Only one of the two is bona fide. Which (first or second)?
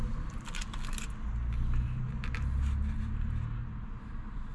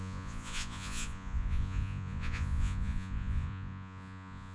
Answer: first